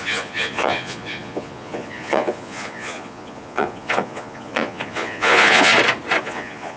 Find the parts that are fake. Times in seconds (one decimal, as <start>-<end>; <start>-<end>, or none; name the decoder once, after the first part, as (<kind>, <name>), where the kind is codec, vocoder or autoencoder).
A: 0.0-5.7 (vocoder, Vocos); 6.2-6.8